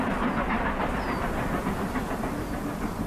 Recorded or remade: recorded